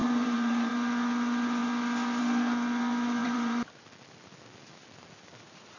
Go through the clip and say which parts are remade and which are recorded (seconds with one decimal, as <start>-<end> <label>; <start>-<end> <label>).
0.0-0.7 remade; 0.7-3.2 recorded; 3.2-3.8 remade; 3.8-5.8 recorded